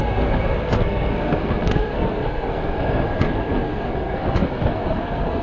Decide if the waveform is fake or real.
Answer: fake